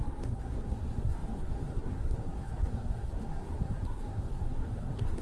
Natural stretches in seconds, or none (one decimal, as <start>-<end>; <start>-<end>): none